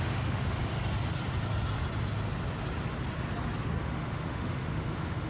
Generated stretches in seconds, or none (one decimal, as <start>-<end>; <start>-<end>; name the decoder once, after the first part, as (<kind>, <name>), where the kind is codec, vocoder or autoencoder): 0.0-0.6 (autoencoder, DAC-VAE); 3.8-5.3